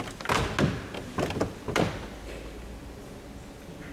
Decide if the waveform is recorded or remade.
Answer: recorded